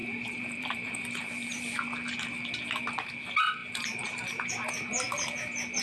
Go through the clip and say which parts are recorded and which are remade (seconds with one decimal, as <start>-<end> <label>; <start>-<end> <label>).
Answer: 0.0-1.7 remade; 1.7-3.6 recorded; 3.6-4.5 remade; 4.5-5.8 recorded